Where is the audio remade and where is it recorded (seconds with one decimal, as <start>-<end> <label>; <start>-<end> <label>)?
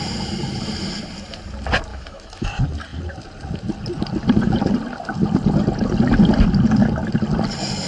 0.0-1.9 recorded; 1.9-2.5 remade; 2.5-7.9 recorded